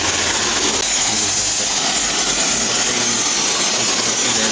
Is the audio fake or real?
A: real